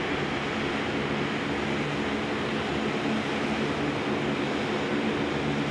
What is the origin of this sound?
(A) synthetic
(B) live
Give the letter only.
B